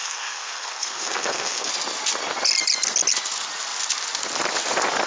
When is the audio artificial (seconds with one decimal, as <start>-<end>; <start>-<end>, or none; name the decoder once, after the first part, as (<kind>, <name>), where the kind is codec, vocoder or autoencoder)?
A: 0.0-1.7 (codec, SNAC)